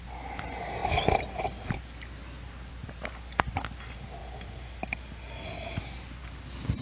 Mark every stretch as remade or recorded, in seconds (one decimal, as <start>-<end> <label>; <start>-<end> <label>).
0.0-6.8 recorded